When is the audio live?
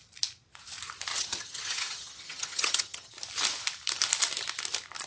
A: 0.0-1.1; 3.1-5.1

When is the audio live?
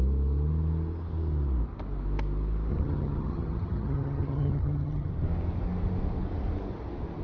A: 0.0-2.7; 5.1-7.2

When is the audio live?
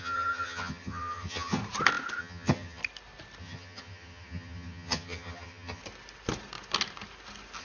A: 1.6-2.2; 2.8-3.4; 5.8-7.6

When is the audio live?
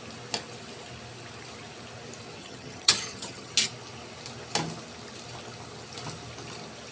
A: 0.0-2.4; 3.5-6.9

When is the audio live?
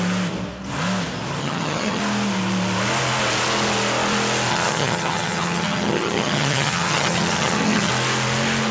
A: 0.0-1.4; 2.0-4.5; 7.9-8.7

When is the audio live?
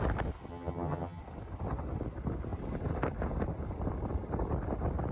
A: 0.0-0.5; 1.2-5.1